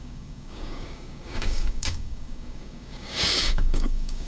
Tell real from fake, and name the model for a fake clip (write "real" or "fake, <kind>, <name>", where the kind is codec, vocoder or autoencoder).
fake, codec, DAC